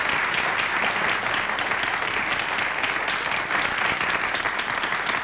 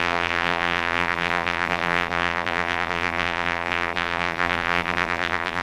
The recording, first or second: first